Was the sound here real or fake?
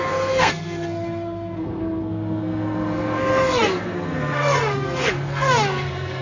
fake